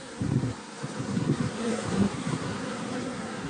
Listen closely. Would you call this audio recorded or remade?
remade